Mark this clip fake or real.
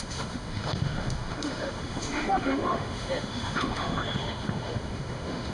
fake